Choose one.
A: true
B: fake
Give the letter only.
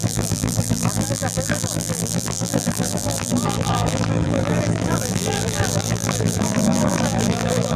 B